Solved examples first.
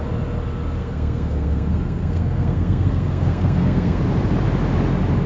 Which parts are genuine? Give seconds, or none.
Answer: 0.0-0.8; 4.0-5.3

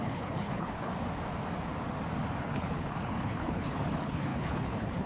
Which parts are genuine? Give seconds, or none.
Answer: 0.9-2.4